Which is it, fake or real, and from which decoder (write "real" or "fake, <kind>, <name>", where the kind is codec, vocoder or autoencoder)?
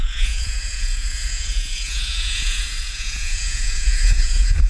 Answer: fake, vocoder, Vocos